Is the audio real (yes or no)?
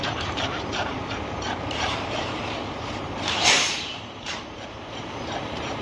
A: no